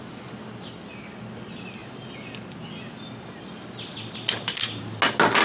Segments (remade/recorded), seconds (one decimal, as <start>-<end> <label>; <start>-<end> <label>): 0.0-5.4 recorded